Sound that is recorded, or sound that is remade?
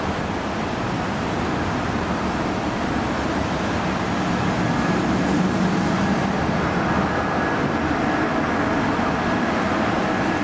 recorded